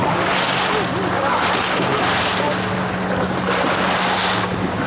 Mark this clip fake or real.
real